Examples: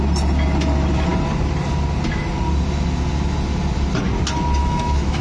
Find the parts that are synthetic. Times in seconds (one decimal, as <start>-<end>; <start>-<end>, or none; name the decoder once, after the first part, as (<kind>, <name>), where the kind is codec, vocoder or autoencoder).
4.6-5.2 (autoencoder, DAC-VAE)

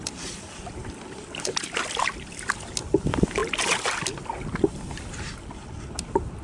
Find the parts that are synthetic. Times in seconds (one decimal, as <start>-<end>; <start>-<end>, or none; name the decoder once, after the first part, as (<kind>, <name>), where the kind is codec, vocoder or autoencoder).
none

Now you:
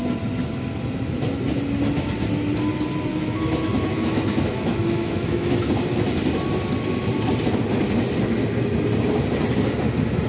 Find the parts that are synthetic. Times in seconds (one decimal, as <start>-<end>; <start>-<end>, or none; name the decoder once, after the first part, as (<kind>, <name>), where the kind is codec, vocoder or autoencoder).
3.1-5.7 (autoencoder, DAC-VAE)

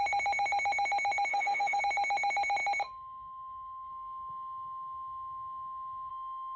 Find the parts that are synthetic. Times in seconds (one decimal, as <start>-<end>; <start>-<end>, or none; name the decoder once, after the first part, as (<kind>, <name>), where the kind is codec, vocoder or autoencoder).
1.3-1.8 (autoencoder, DAC-VAE); 6.1-6.6

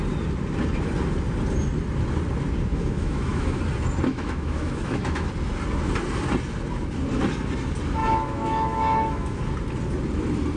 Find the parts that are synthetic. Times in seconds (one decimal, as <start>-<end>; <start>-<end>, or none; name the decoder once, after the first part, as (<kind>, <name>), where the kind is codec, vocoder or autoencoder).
2.7-3.6 (autoencoder, DAC-VAE); 4.1-5.3; 8.0-9.4

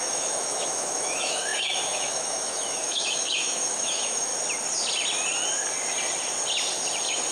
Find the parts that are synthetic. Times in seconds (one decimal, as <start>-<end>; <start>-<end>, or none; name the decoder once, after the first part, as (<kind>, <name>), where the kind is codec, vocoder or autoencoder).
0.0-4.3 (autoencoder, DAC-VAE)

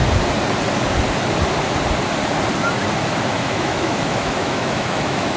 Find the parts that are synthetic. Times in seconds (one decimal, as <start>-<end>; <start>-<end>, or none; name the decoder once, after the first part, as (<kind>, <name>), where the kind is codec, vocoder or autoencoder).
3.2-5.4 (autoencoder, DAC-VAE)

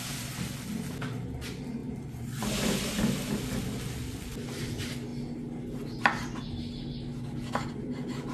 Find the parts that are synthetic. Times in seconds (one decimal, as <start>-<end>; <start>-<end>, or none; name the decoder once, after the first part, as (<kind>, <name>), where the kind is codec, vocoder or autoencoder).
none